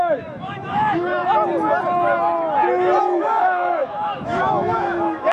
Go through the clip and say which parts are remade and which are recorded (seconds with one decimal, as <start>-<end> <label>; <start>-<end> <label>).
0.0-1.2 remade; 1.2-3.0 recorded; 3.0-5.3 remade